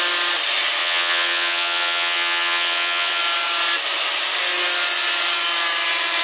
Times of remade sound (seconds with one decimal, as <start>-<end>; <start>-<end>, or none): 0.8-3.2